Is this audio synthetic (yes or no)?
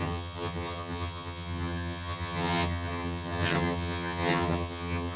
yes